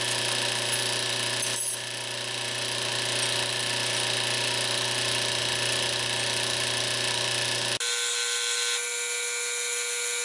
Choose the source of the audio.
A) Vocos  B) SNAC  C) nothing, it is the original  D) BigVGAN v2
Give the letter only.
C